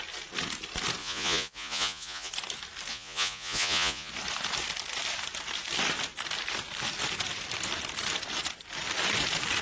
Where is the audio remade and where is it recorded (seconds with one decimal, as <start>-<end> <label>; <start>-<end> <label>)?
0.0-1.0 recorded; 1.0-2.3 remade; 2.3-2.9 recorded; 2.9-4.1 remade; 4.1-9.6 recorded